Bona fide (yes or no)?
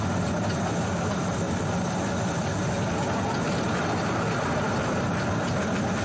yes